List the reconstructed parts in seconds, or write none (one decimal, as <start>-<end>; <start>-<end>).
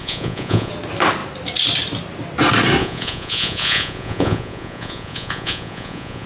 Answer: 0.0-0.7; 2.8-6.3